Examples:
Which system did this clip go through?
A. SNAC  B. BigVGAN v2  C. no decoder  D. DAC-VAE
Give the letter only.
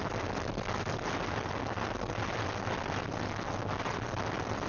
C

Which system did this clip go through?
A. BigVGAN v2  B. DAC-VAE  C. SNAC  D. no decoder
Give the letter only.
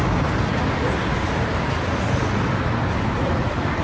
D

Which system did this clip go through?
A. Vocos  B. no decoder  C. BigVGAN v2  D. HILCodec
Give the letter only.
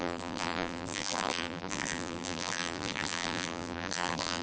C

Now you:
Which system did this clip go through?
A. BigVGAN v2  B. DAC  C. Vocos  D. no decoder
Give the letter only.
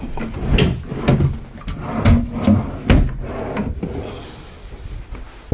D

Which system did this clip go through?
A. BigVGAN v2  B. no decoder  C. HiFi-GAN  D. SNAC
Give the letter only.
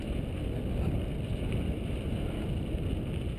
B